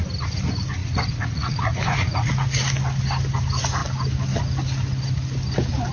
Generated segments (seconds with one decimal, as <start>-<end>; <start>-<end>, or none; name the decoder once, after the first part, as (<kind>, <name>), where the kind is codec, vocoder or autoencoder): 0.8-2.3 (vocoder, Vocos)